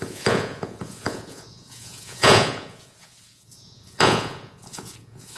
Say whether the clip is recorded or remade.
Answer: remade